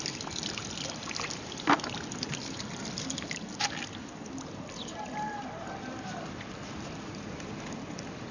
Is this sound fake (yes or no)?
no